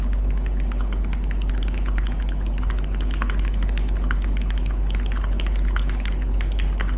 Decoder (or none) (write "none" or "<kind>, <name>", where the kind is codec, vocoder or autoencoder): codec, HILCodec